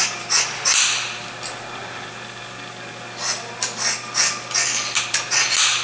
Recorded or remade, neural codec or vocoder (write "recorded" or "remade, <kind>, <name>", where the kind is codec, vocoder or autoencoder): recorded